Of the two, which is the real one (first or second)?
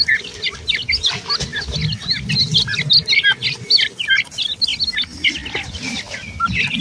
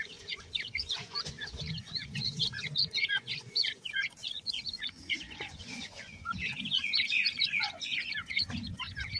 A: first